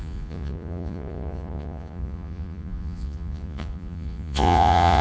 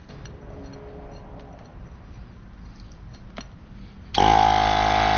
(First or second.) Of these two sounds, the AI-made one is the first